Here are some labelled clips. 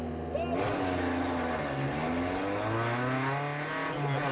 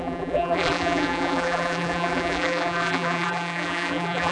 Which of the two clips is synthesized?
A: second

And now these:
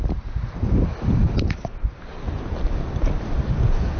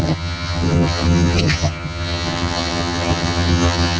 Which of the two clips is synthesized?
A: second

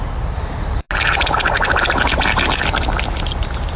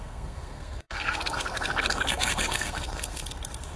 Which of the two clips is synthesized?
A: second